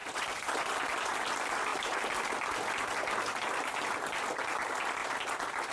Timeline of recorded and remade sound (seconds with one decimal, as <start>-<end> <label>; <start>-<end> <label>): 0.0-5.7 recorded